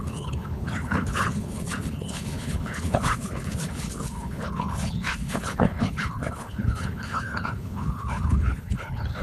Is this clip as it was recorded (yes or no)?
no